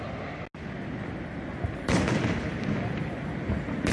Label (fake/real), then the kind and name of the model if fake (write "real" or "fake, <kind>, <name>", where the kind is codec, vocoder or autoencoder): real